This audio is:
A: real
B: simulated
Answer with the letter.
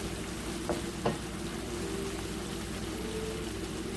A